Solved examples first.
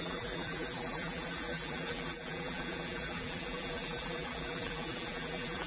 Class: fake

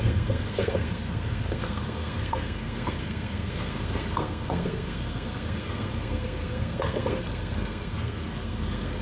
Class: fake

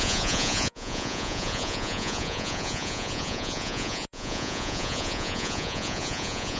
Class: fake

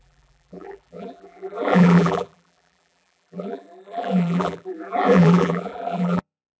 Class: fake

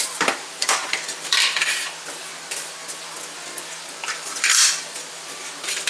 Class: fake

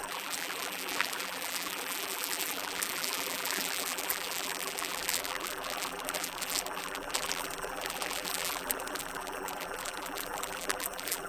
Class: fake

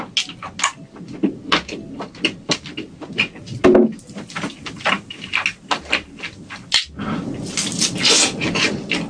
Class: real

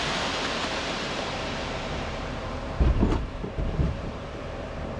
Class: fake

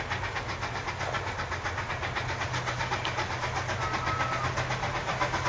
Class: real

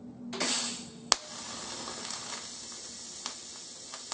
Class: real